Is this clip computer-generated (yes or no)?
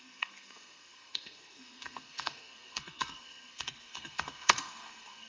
yes